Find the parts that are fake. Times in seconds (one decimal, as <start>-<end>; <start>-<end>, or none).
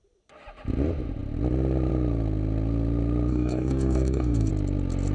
3.3-4.5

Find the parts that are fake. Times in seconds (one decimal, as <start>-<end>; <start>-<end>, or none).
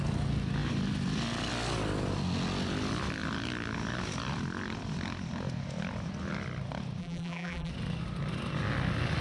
7.0-7.7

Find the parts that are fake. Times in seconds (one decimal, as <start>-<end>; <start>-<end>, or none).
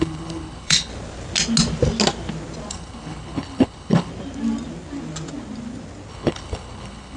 0.0-0.9; 2.7-4.1; 6.1-7.2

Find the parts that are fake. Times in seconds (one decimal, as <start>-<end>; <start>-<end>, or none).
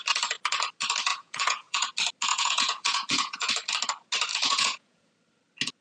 1.1-1.9; 2.3-3.5; 4.3-5.1